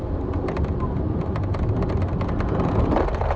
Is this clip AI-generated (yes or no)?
no